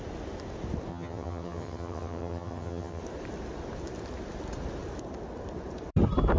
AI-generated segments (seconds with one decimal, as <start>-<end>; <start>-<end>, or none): 0.9-3.0